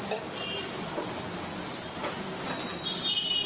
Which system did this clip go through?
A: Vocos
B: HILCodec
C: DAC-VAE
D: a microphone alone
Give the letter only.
D